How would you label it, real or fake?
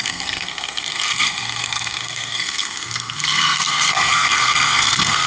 fake